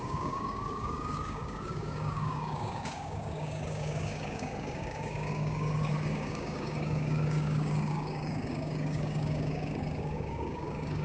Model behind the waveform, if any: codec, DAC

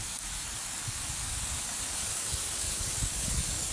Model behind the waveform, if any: codec, DAC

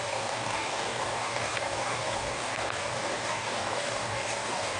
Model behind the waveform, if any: codec, DAC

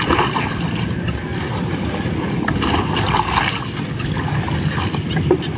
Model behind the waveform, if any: none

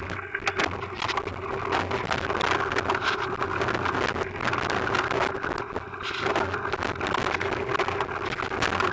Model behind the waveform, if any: none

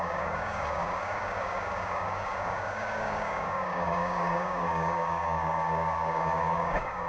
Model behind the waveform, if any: codec, DAC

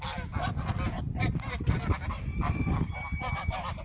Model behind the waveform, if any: none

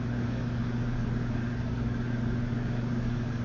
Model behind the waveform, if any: codec, DAC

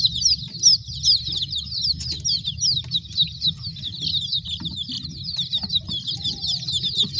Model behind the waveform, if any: none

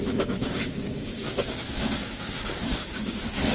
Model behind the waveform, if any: codec, DAC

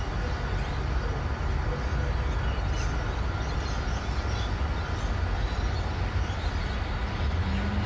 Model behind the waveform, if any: none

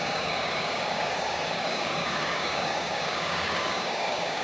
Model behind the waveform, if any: codec, DAC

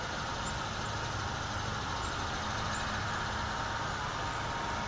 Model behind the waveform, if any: none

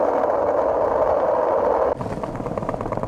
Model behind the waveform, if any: none